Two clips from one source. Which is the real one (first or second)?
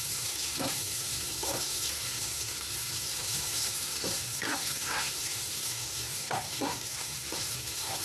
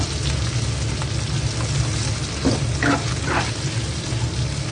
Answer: second